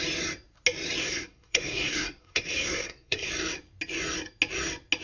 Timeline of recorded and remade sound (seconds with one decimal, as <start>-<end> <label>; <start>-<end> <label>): 0.0-1.0 recorded; 1.0-3.3 remade; 3.3-5.0 recorded